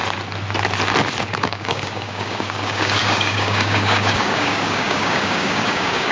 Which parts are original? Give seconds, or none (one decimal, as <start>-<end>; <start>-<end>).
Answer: 0.0-1.2